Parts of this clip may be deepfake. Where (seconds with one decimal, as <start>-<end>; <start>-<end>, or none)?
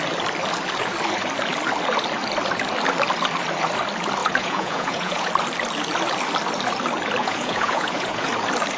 4.2-5.3; 7.2-8.3